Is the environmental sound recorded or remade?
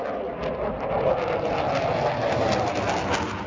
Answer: recorded